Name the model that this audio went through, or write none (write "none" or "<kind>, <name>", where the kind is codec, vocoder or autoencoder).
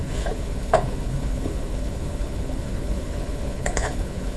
codec, HILCodec